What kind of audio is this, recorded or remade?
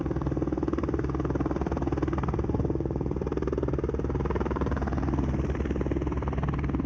recorded